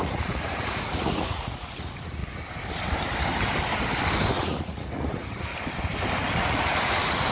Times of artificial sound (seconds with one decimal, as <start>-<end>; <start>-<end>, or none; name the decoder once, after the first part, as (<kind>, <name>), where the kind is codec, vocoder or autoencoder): 0.0-2.2 (vocoder, Vocos); 4.3-5.5; 6.3-7.3